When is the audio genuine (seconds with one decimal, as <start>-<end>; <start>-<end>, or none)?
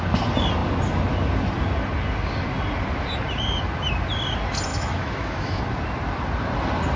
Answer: 0.0-4.7; 5.6-7.0